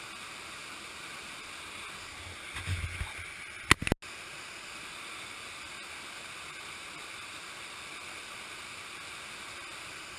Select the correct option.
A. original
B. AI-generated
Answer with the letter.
A